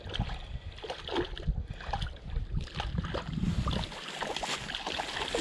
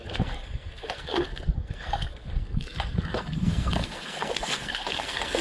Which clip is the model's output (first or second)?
second